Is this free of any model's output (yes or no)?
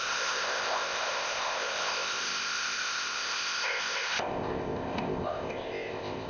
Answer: no